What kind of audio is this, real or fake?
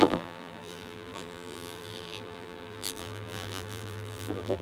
fake